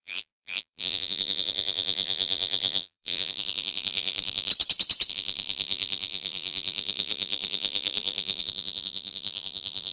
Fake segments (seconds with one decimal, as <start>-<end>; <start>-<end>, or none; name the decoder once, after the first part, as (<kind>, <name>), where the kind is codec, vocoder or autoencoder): 0.0-4.5 (vocoder, BigVGAN v2); 5.1-9.9